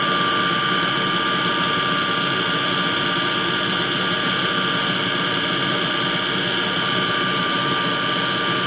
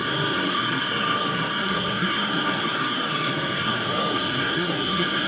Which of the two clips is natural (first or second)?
first